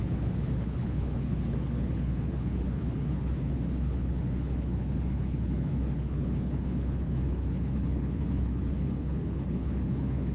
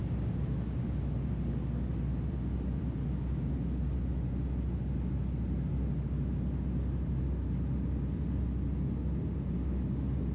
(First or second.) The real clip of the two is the second